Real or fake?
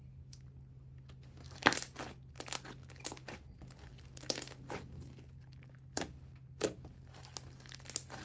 real